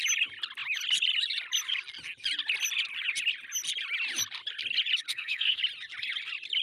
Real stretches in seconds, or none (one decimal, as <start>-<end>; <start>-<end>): 0.0-5.1; 5.6-6.6